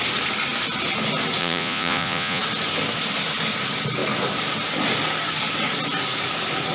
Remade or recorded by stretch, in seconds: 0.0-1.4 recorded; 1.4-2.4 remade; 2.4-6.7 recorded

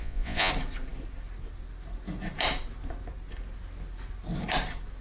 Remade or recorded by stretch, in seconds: 0.0-0.5 remade; 0.5-5.0 recorded

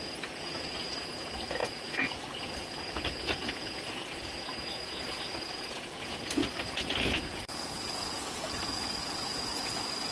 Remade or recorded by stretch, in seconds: 0.0-10.1 remade

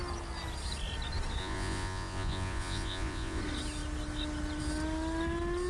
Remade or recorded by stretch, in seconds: 0.0-1.4 recorded; 1.4-3.4 remade; 3.4-5.7 recorded

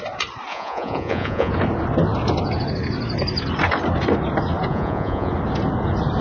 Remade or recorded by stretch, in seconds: 0.0-0.5 recorded; 0.5-1.5 remade; 1.5-4.7 recorded; 4.7-5.3 remade; 5.3-6.2 recorded

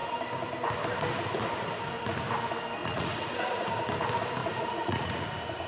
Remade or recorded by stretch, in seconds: 0.0-2.8 recorded; 2.8-3.7 remade; 3.7-4.4 recorded; 4.4-5.3 remade; 5.3-5.7 recorded